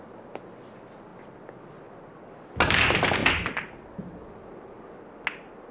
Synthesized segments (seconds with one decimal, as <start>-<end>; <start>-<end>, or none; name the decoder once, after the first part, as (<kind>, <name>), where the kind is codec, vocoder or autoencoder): none